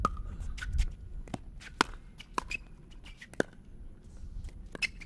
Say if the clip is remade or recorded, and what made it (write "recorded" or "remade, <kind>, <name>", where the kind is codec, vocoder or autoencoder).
recorded